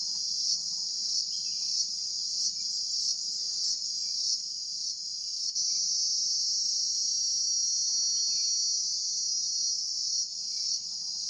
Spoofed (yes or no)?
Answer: no